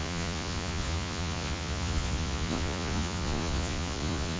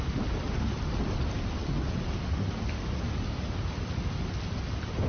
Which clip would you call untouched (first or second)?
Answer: second